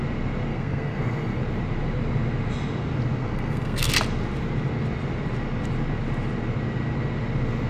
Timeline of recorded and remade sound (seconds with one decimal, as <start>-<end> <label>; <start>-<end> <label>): 0.0-0.5 recorded; 0.5-1.4 remade; 1.4-3.2 recorded; 3.2-3.9 remade; 3.9-7.7 recorded